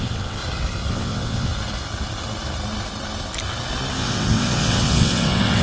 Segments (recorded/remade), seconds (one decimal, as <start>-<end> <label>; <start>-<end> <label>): 0.0-0.4 remade; 0.4-0.9 recorded; 0.9-1.5 remade; 1.5-3.9 recorded; 3.9-5.6 remade